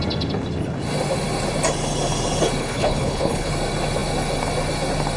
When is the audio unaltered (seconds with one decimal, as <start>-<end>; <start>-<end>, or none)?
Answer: 0.0-2.6; 3.5-5.2